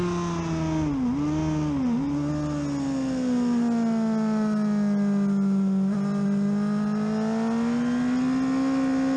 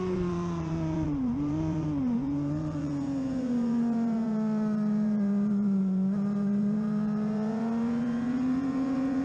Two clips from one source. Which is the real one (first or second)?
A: first